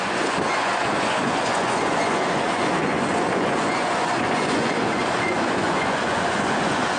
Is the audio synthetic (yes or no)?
yes